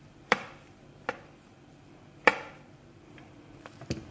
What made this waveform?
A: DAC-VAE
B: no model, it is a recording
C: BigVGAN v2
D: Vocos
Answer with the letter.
C